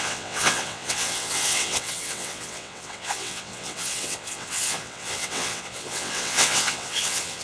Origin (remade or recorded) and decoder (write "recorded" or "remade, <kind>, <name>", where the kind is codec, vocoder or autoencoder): remade, vocoder, WaveNeXt